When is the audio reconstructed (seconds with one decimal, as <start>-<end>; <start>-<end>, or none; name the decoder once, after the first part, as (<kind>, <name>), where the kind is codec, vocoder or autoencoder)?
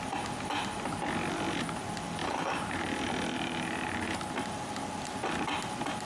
2.2-2.9 (vocoder, BigVGAN v2); 3.3-4.1